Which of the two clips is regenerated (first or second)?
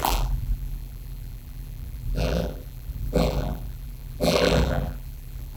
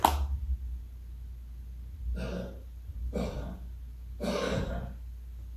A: first